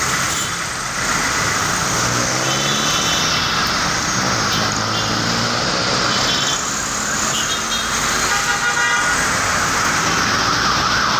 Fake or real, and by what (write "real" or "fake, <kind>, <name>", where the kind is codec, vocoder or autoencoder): real